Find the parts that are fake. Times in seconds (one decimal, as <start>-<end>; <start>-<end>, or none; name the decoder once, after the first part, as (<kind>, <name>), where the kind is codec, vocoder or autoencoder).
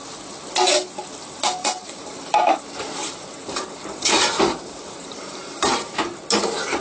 1.6-2.6 (vocoder, BigVGAN v2); 3.0-5.9